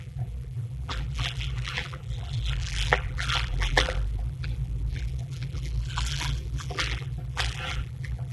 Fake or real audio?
fake